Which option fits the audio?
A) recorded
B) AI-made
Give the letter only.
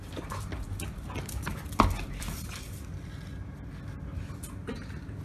A